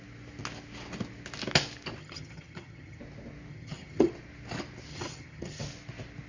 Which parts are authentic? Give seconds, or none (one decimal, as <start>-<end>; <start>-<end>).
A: 0.0-2.0; 3.0-3.5; 4.1-4.9; 5.6-6.3